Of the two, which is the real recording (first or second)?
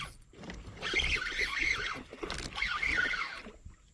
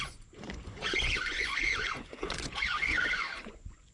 first